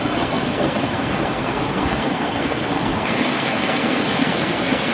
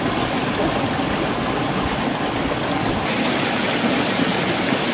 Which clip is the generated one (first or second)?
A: first